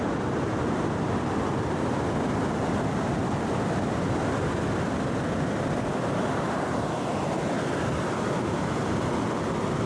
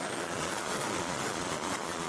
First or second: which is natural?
first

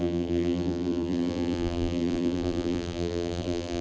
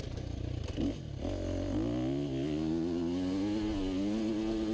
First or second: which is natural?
second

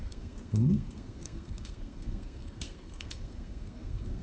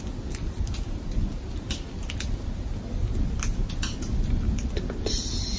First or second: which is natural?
second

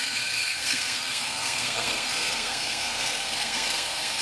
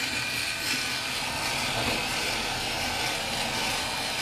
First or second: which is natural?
second